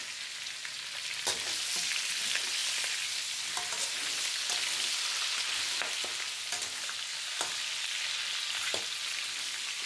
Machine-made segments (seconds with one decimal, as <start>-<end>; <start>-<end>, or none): none